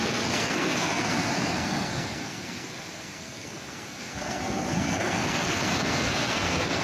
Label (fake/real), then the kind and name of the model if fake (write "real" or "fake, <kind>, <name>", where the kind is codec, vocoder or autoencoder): fake, codec, SNAC